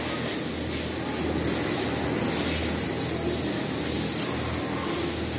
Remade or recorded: recorded